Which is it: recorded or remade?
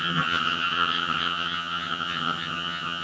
remade